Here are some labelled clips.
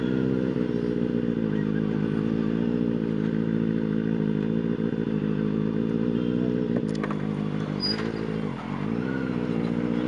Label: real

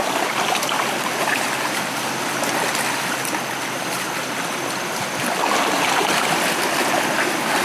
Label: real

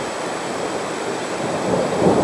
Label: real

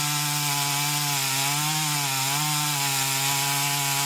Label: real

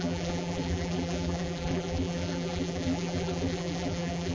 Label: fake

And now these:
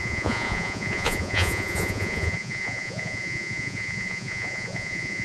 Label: fake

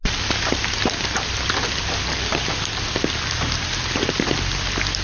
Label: fake